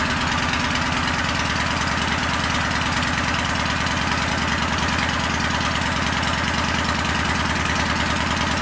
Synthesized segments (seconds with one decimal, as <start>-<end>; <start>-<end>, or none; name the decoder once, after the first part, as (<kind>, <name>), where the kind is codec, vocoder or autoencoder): none